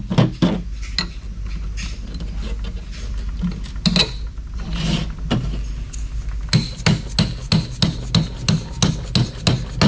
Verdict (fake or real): real